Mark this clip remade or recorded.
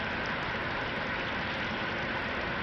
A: recorded